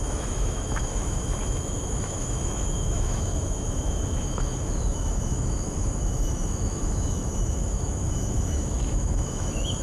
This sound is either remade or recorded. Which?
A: remade